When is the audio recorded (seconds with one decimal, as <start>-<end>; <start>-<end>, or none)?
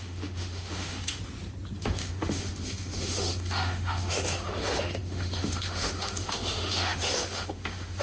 1.2-1.8